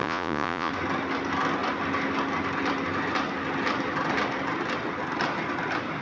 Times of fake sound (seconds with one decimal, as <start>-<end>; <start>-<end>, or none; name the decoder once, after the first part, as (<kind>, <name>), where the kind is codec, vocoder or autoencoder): 0.0-0.7 (vocoder, Vocos)